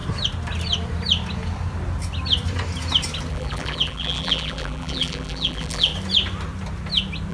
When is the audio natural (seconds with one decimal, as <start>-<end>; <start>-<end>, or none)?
0.0-3.3; 5.9-7.3